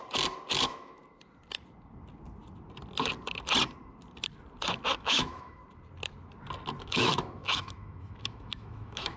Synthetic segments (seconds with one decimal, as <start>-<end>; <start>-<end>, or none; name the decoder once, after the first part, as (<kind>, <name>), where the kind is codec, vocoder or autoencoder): 0.6-1.0 (autoencoder, DAC-VAE); 4.9-5.6; 6.8-9.2